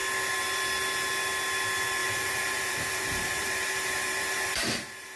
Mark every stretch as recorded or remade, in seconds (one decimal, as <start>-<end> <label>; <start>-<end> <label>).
0.0-2.0 recorded; 2.0-5.2 remade